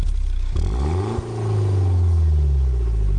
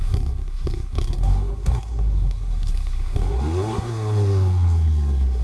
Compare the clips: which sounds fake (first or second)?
second